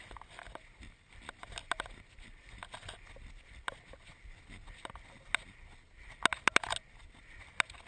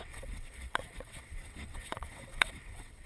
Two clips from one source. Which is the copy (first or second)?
second